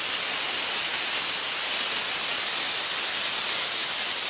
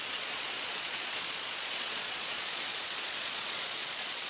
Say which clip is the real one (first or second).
first